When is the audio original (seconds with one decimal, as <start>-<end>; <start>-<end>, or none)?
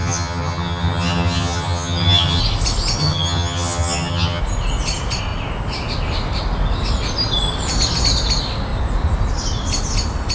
2.4-3.0; 4.4-10.3